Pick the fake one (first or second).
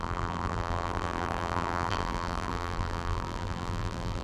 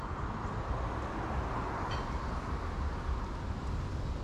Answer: first